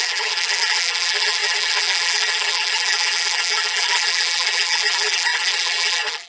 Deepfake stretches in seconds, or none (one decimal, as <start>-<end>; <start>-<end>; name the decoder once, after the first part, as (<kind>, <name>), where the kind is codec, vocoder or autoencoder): 0.0-6.3 (vocoder, BigVGAN v2)